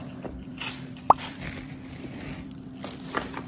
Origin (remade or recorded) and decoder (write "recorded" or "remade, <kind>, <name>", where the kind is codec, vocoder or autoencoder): remade, vocoder, BigVGAN v2